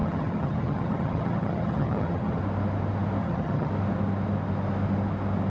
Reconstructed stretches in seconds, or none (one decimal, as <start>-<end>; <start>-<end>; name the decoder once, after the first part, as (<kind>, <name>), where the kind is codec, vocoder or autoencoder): 0.0-2.4 (vocoder, HiFi-GAN); 3.2-3.7